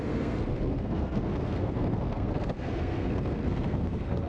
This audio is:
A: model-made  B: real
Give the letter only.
A